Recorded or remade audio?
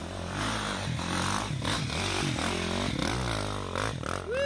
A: recorded